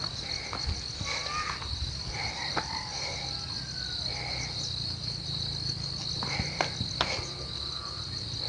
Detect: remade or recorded recorded